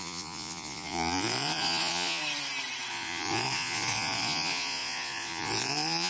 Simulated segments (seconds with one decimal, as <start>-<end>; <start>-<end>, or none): 0.0-2.2; 2.9-6.1